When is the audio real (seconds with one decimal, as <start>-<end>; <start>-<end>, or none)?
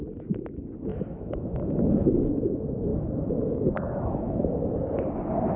0.0-0.9; 2.4-2.9; 4.5-5.6